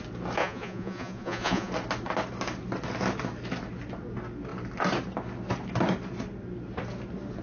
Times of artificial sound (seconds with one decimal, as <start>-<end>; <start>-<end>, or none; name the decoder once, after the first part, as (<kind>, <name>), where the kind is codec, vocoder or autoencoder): 0.4-1.7 (vocoder, Vocos)